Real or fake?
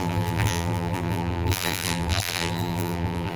fake